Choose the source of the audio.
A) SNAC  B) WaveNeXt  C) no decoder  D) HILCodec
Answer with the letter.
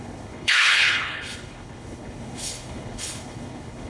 D